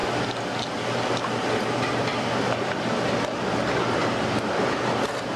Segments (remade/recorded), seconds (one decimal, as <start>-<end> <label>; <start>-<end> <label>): 0.0-5.4 recorded